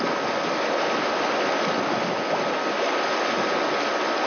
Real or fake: real